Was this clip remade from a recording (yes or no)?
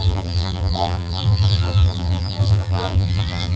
yes